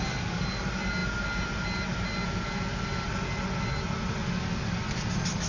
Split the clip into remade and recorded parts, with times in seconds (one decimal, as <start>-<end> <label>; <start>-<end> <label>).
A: 0.0-5.5 recorded